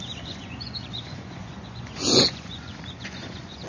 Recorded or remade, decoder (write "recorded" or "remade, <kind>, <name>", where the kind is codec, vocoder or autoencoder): remade, vocoder, Vocos